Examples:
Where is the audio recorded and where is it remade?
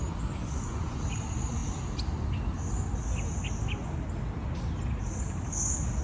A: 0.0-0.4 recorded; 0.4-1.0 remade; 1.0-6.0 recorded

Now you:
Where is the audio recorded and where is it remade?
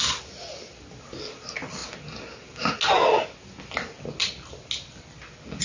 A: 0.0-5.6 recorded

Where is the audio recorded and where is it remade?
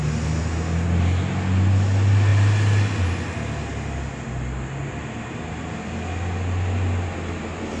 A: 0.0-7.8 recorded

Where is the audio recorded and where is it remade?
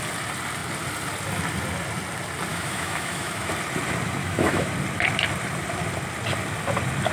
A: 0.0-2.5 recorded; 2.5-3.5 remade; 3.5-4.2 recorded; 4.2-4.7 remade; 4.7-7.1 recorded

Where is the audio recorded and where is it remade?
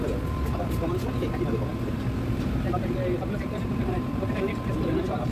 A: 0.0-1.7 recorded; 1.7-5.3 remade